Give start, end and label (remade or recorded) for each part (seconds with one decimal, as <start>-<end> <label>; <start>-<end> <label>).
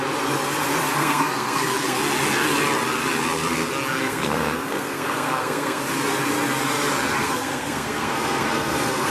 0.0-1.0 recorded; 1.0-2.0 remade; 2.0-4.0 recorded; 4.0-5.8 remade; 5.8-7.2 recorded; 7.2-9.1 remade